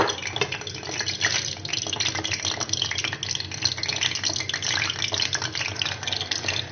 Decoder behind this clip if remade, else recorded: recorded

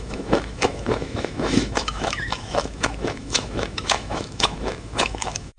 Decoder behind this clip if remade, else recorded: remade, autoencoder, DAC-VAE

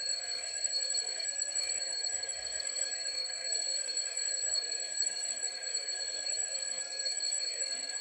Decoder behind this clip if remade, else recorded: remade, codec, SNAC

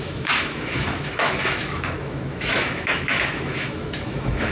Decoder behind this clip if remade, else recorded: remade, autoencoder, DAC-VAE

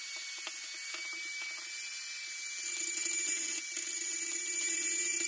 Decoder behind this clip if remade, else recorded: recorded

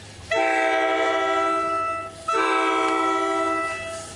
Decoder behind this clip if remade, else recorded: recorded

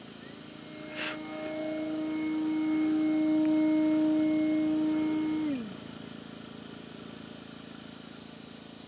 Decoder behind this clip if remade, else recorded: recorded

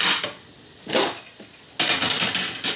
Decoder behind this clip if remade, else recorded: recorded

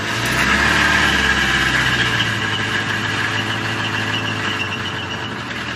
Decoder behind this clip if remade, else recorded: recorded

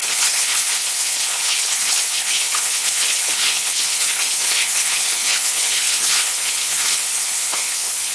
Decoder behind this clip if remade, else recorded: remade, codec, HILCodec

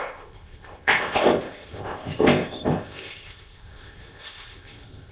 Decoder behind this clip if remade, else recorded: remade, codec, ZipCodec